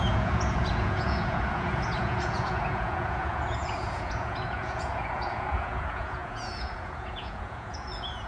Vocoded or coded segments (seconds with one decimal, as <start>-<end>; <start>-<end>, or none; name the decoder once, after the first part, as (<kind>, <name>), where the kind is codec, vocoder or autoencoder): 0.0-8.3 (vocoder, Vocos)